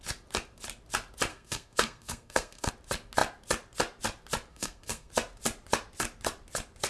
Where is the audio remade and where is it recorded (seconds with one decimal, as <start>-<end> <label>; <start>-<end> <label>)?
0.0-1.3 recorded; 1.3-2.7 remade; 2.7-4.5 recorded; 4.5-5.1 remade; 5.1-6.9 recorded